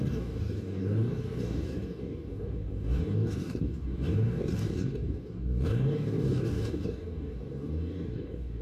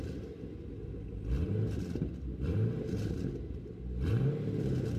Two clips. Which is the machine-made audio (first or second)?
first